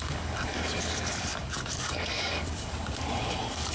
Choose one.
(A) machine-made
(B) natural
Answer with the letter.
A